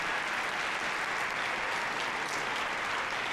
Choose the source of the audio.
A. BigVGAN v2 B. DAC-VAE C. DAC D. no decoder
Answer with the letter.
D